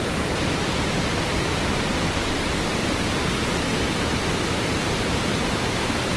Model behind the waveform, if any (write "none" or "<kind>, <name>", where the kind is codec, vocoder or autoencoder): none